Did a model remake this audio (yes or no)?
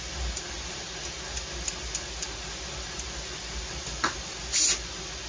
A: no